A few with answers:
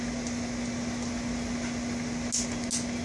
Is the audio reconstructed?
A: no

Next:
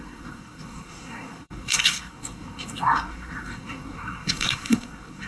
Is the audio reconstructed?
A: yes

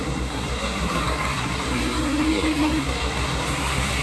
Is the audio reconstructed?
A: yes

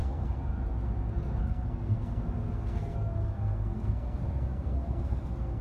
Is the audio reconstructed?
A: yes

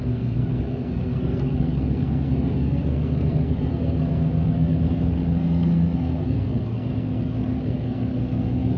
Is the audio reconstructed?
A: yes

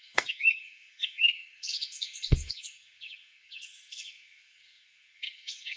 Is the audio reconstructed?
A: yes